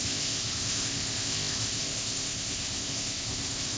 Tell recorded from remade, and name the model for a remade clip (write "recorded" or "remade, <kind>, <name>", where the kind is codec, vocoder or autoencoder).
remade, codec, ZipCodec